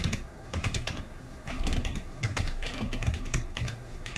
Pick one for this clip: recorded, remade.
remade